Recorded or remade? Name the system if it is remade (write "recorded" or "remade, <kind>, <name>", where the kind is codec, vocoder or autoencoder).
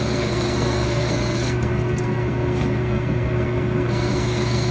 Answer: remade, codec, SNAC